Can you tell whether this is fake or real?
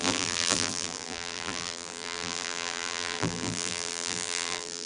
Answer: fake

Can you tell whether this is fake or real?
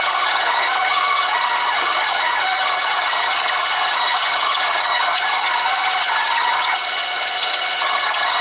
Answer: fake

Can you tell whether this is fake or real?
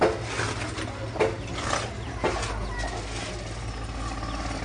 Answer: real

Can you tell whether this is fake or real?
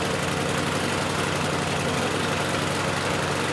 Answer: real